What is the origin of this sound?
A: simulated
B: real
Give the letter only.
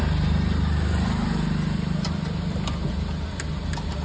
B